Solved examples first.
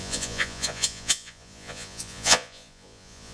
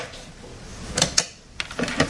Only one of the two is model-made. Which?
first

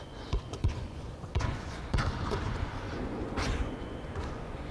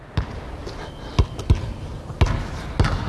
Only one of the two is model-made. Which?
first